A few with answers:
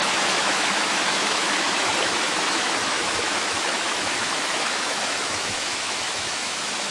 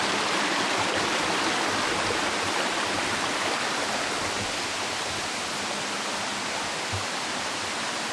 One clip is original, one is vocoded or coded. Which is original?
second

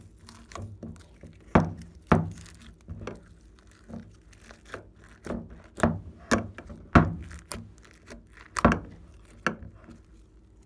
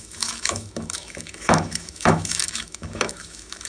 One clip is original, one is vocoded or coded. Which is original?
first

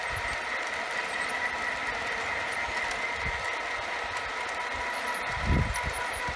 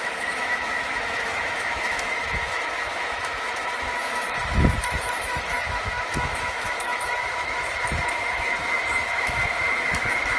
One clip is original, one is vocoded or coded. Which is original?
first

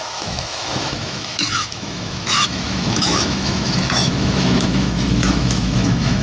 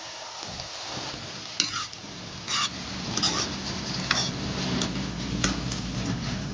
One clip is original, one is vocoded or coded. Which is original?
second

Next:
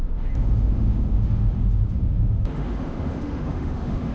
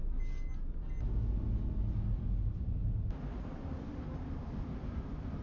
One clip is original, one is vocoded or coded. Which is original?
second